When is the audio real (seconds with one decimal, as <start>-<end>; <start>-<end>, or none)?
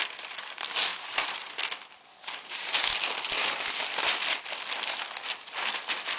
0.0-0.9; 1.5-6.2